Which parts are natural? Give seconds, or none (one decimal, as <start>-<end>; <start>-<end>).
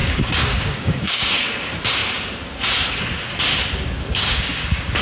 1.4-4.1